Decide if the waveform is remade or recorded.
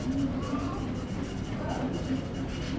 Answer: recorded